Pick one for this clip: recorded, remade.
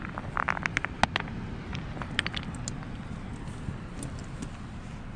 recorded